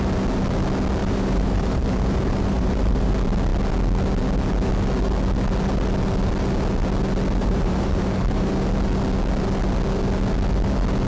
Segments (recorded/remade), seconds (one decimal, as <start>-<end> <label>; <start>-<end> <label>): 0.0-1.0 recorded; 1.0-3.1 remade; 3.1-7.4 recorded; 7.4-8.5 remade; 8.5-11.1 recorded